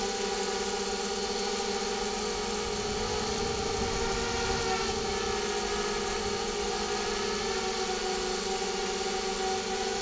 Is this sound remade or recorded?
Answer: recorded